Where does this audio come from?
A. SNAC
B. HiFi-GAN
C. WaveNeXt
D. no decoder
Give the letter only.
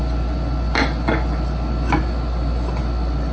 D